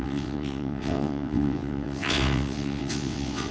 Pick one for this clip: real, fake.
fake